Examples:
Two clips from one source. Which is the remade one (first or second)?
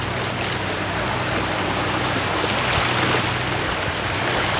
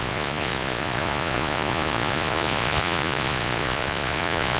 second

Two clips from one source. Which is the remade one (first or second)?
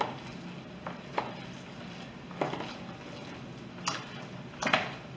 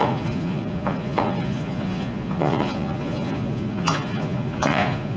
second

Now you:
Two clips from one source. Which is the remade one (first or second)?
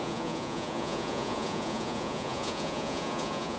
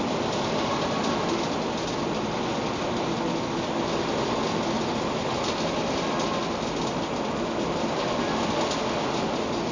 first